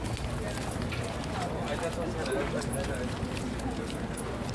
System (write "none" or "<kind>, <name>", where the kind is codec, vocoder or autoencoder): none